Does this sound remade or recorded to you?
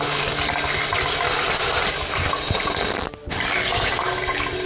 recorded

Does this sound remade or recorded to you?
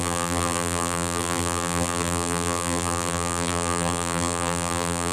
remade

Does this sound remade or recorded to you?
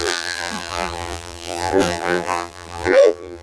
remade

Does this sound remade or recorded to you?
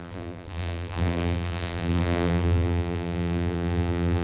remade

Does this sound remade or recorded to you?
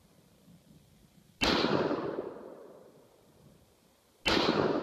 recorded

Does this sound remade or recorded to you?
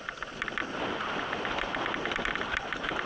remade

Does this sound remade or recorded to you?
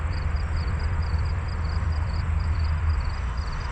remade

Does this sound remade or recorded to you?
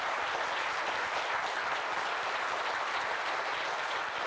recorded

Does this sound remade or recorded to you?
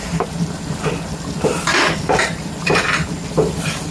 remade